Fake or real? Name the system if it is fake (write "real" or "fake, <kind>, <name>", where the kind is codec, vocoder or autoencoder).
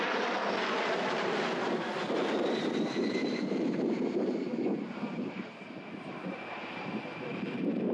fake, vocoder, BigVGAN v2